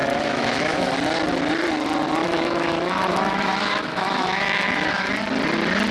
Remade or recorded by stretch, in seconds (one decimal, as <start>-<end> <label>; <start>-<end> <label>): 0.0-0.9 remade; 0.9-2.2 recorded; 2.2-5.1 remade; 5.1-5.9 recorded